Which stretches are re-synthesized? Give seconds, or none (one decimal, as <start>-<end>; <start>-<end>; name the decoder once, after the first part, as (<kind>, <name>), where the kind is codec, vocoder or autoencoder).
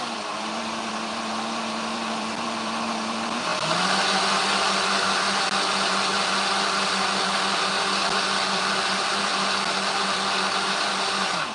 0.0-3.5 (vocoder, BigVGAN v2); 8.7-9.3; 10.8-11.5